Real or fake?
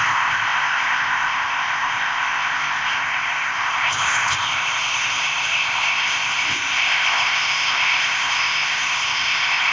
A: fake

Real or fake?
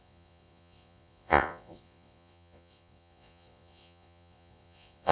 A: fake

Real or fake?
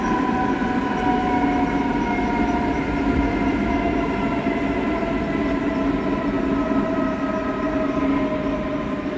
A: real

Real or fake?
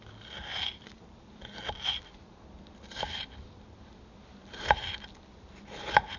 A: real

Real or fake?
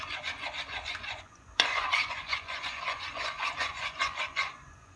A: fake